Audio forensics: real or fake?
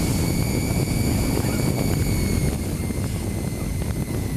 real